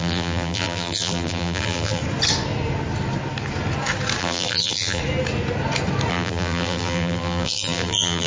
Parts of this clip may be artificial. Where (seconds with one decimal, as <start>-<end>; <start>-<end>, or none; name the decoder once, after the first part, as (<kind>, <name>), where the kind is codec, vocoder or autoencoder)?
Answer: 0.0-2.0 (vocoder, BigVGAN v2); 4.2-5.0; 6.1-8.3